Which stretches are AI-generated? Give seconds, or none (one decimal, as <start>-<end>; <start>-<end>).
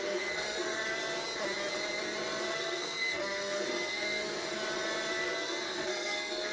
0.0-1.0; 2.5-4.6; 5.2-6.5